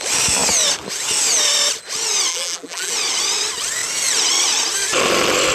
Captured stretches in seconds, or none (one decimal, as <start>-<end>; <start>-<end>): 0.0-2.3; 2.9-5.5